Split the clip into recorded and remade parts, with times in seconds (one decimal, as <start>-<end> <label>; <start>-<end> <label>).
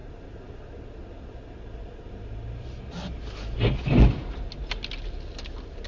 0.0-5.9 recorded